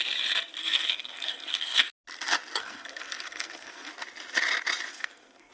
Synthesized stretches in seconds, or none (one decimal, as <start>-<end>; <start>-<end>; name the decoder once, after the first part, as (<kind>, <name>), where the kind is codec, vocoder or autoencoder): 0.6-1.9 (codec, SNAC); 2.6-3.9; 4.9-5.5